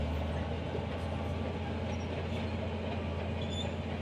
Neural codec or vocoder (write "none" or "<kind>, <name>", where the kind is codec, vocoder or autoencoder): none